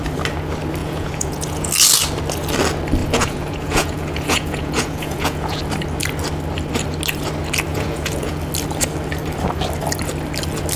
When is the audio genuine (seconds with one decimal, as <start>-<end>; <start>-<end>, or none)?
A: 0.0-0.8; 1.7-3.0; 5.6-7.7; 8.4-10.8